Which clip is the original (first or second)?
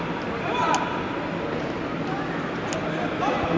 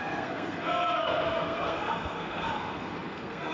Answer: first